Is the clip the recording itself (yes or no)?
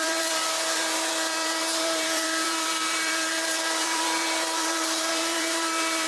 no